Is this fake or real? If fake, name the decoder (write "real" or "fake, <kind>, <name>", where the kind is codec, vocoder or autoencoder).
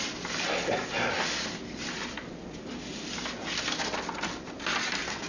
real